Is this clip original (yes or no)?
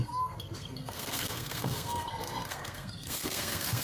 no